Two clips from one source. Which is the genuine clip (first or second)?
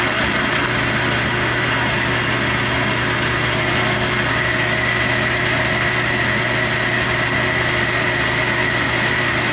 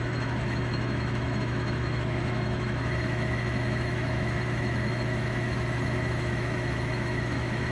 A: first